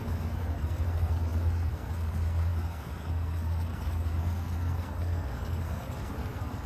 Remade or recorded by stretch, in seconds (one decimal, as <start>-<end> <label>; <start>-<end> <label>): 0.0-6.7 remade